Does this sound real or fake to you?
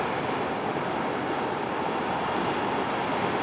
real